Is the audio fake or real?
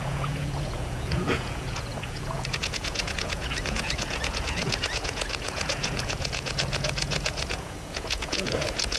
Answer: fake